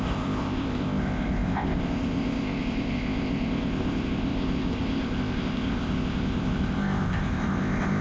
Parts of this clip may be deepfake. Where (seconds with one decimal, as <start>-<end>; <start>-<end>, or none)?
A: 0.0-8.0